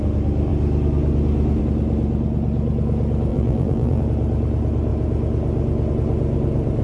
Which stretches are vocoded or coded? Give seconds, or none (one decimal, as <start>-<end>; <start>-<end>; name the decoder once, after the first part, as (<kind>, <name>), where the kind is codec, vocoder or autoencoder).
3.3-4.0 (vocoder, BigVGAN v2)